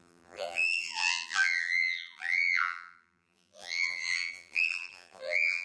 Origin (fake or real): fake